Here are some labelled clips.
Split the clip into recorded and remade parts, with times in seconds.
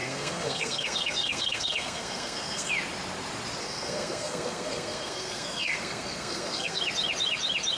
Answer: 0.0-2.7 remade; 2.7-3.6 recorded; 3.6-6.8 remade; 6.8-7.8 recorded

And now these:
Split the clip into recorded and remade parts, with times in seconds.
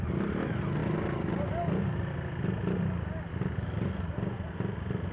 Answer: 0.0-5.1 recorded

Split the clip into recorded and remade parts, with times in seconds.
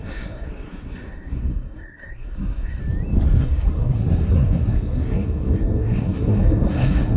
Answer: 0.0-2.8 remade; 2.8-3.4 recorded; 3.4-7.2 remade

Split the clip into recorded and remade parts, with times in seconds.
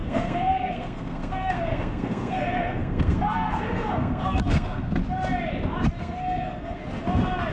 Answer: 0.0-5.0 remade; 5.0-6.0 recorded; 6.0-6.8 remade; 6.8-7.5 recorded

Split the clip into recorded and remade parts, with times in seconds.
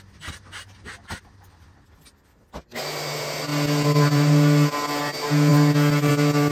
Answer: 0.0-6.5 recorded